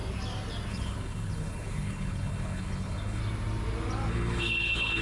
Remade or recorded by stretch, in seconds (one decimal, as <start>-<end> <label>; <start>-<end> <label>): 0.0-0.7 recorded; 0.7-3.2 remade; 3.2-4.1 recorded; 4.1-5.0 remade